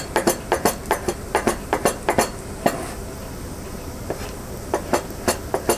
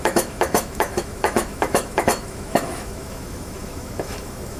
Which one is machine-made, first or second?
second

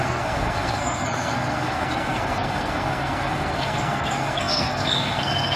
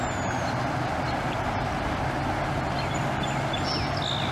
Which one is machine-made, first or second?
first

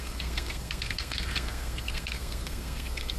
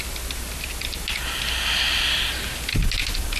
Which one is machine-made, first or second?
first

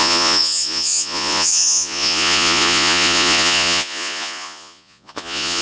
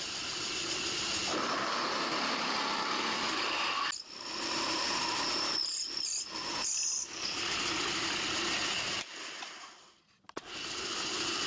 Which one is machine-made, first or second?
first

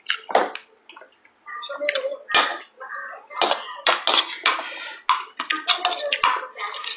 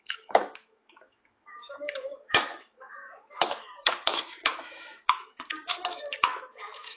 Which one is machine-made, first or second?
second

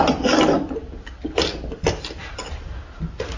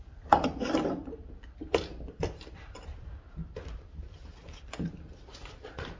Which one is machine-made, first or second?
second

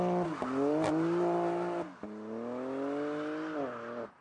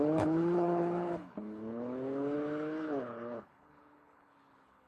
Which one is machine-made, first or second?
second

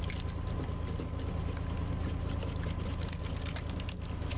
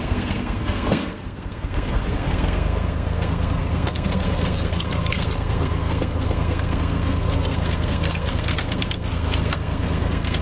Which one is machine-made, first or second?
second